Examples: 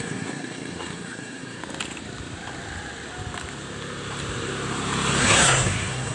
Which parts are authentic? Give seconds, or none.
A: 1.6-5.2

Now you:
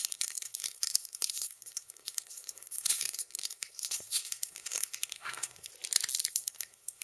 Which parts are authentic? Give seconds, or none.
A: 5.7-6.3

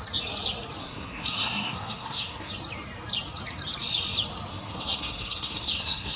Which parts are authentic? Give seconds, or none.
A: 0.0-0.8; 2.5-4.5

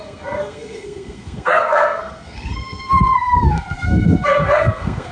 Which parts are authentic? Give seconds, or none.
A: none

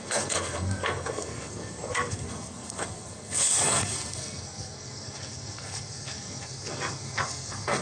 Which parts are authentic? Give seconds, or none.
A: none

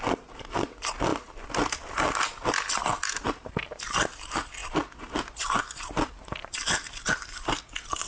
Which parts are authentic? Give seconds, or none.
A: 0.0-8.1